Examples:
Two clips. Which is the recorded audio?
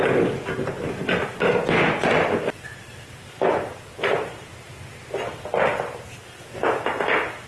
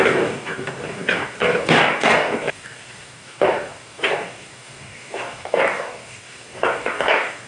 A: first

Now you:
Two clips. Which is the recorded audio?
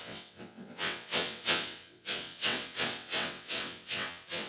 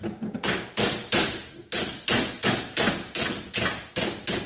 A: second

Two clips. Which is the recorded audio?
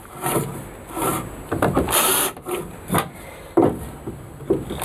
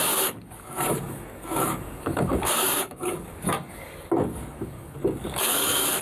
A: first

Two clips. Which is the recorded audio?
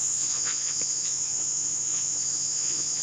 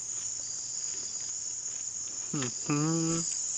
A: second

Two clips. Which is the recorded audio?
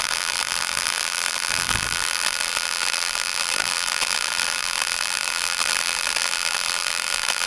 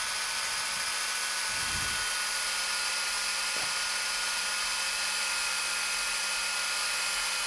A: second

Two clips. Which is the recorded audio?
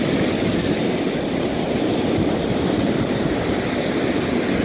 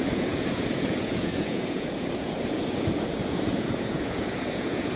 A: first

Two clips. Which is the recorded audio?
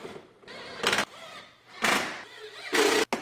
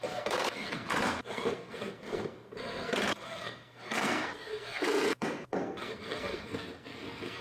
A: first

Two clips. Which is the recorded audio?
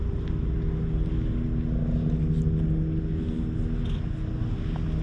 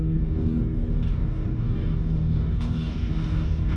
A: first